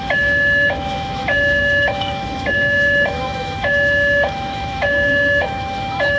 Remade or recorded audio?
remade